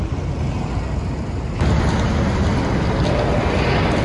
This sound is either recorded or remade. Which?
recorded